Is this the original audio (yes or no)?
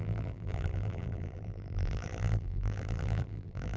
no